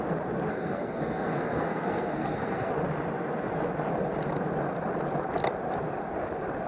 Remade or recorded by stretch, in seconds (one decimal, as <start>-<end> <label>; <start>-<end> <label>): 0.0-0.5 recorded; 0.5-2.7 remade; 2.7-6.7 recorded